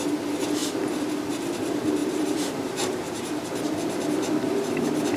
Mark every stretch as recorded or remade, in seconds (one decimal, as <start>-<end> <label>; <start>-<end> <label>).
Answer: 0.0-2.0 recorded; 2.0-3.3 remade; 3.3-5.2 recorded